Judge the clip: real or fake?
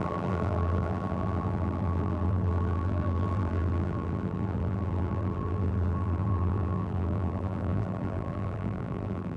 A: fake